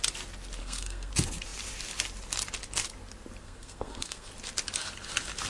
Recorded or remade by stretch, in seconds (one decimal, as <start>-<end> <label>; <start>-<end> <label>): 0.0-0.6 recorded; 0.6-1.1 remade; 1.1-3.4 recorded; 3.4-4.3 remade; 4.3-5.5 recorded